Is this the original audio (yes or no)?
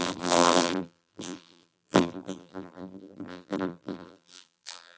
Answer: no